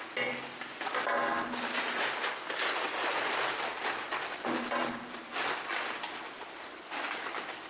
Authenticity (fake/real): real